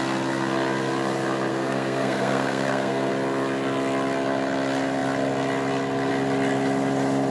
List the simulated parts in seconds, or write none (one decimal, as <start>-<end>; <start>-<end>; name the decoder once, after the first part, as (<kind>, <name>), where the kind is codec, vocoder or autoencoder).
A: 1.5-3.1 (codec, SNAC)